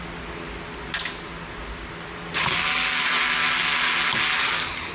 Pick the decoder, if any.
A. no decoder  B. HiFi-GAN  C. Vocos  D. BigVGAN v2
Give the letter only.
A